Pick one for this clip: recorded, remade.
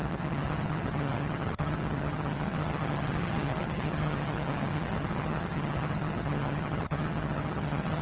remade